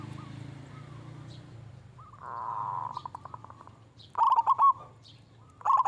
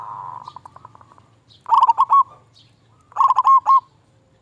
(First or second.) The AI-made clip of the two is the first